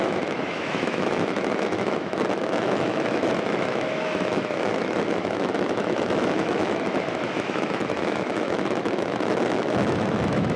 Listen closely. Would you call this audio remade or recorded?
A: remade